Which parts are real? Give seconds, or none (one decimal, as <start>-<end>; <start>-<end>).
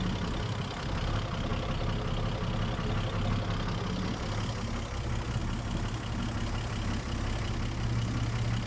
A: 0.0-8.7